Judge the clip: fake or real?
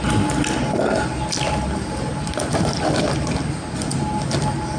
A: real